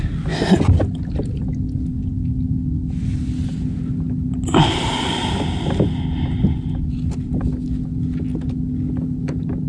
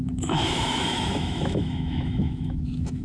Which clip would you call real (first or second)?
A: first